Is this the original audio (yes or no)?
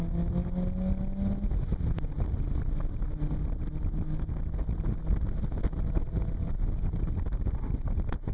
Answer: yes